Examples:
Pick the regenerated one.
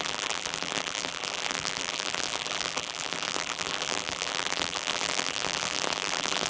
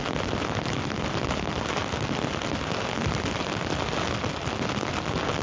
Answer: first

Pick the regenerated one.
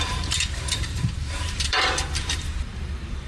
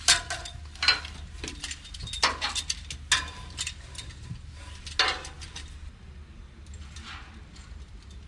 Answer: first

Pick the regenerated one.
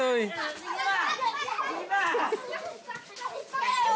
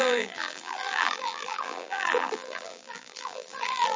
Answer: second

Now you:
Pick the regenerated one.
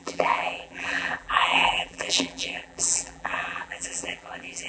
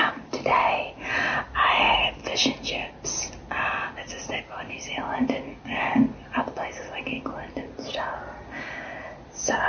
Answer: first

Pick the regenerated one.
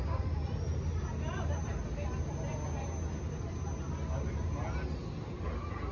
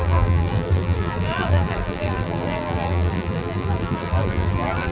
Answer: second